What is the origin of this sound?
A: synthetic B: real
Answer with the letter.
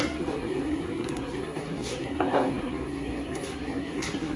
A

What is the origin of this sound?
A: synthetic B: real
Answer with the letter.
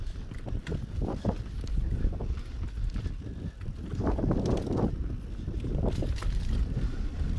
B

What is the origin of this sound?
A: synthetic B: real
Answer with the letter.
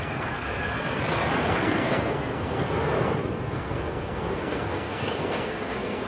A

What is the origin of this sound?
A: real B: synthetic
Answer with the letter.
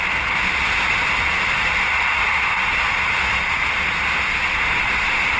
A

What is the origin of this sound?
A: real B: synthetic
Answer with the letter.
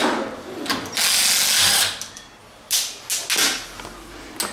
A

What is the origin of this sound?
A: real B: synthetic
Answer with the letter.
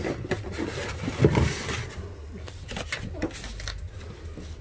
A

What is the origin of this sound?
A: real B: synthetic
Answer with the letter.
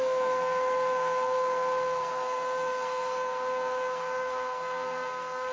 B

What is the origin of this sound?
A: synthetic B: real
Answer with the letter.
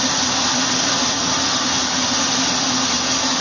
B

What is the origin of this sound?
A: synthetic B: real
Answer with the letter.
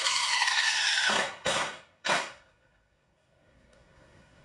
A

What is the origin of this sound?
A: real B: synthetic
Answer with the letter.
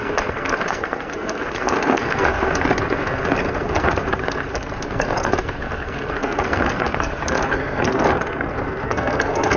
B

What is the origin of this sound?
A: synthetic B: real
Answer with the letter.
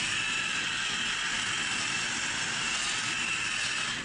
B